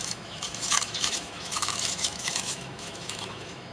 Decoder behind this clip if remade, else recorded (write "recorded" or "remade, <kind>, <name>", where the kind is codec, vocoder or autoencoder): remade, autoencoder, DAC-VAE